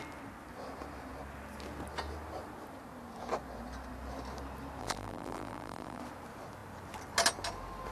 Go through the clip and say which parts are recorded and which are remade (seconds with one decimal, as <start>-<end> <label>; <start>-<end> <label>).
0.0-4.8 recorded; 4.8-6.0 remade; 6.0-7.9 recorded